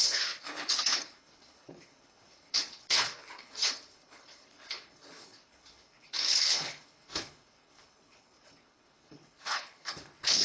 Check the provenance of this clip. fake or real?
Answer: fake